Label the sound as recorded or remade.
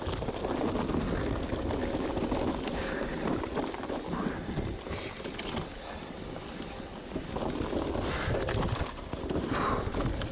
recorded